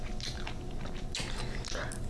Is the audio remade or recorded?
recorded